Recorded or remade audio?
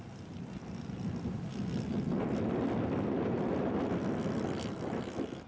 recorded